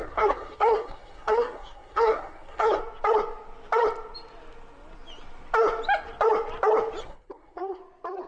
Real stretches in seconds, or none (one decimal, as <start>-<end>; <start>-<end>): 2.8-7.0; 7.8-8.3